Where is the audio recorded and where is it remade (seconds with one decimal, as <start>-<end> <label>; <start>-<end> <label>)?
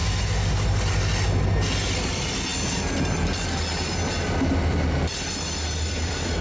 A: 0.0-6.4 recorded